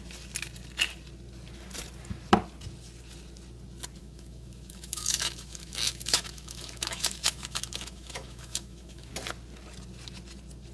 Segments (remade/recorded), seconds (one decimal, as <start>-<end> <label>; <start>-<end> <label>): 0.0-4.0 recorded; 4.0-9.1 remade; 9.1-10.7 recorded